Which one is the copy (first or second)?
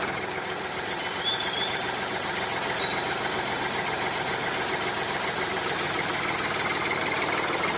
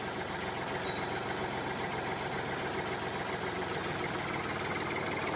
first